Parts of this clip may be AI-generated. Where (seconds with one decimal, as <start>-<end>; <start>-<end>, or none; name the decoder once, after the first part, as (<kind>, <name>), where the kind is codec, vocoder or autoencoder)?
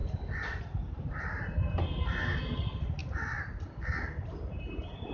0.0-5.1 (vocoder, BigVGAN v2)